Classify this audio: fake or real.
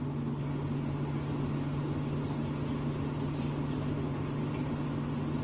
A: real